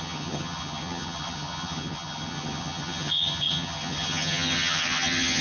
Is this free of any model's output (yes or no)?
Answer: no